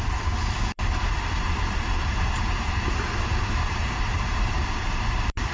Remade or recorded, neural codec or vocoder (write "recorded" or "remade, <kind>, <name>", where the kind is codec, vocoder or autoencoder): remade, vocoder, BigVGAN v2